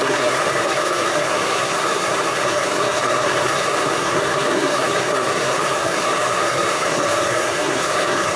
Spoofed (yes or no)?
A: yes